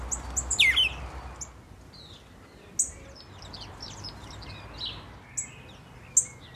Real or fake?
real